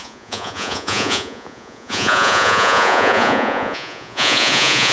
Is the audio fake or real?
fake